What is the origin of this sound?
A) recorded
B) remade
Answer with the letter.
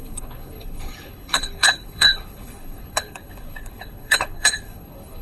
B